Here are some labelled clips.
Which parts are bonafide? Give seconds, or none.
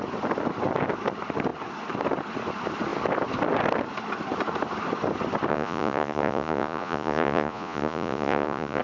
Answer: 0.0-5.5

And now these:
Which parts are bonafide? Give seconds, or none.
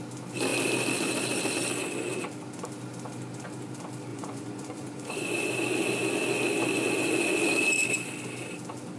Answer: 0.0-4.1; 5.5-9.0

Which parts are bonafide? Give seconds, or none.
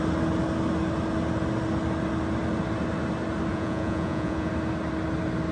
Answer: 0.0-3.5; 4.5-5.5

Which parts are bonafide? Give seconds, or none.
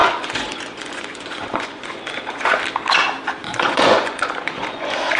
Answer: 2.6-3.4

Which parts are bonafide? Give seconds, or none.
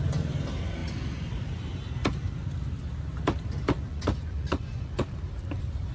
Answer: 0.0-3.9; 5.0-5.9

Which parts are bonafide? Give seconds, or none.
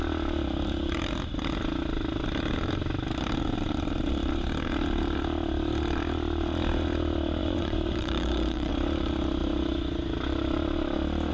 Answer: 0.0-7.4; 8.7-11.3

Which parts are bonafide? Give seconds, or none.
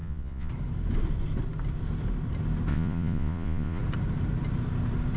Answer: 0.5-2.7; 3.8-5.2